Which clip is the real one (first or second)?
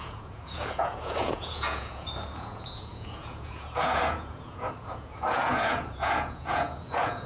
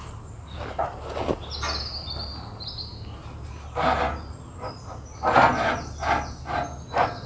second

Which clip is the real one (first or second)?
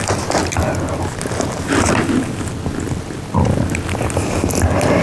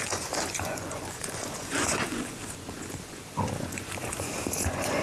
first